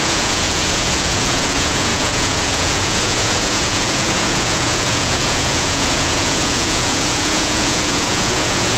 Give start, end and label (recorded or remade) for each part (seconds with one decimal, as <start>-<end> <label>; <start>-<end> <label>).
0.0-8.8 remade